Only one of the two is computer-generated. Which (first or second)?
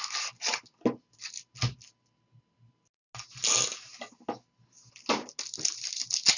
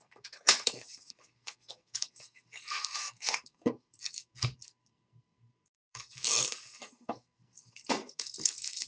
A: second